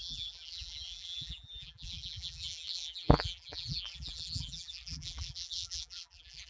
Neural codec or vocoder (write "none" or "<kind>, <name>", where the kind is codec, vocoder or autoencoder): vocoder, BigVGAN v2